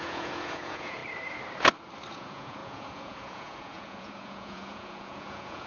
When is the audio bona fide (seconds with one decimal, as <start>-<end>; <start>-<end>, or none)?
1.0-2.1